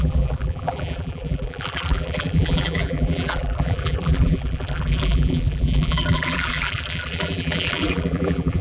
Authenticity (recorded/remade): remade